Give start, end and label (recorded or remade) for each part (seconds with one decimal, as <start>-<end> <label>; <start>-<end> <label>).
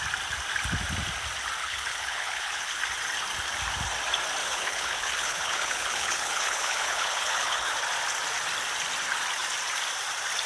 0.0-1.6 recorded; 1.6-2.8 remade; 2.8-4.4 recorded; 4.4-7.7 remade; 7.7-10.5 recorded